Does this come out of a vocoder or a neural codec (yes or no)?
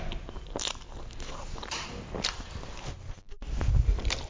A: no